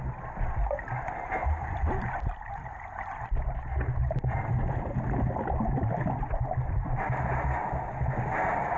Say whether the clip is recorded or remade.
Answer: recorded